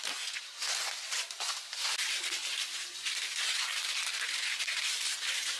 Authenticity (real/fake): real